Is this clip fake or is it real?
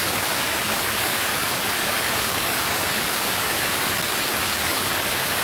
fake